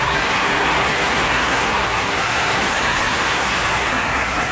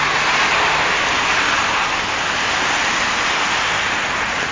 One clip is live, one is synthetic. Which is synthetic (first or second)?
first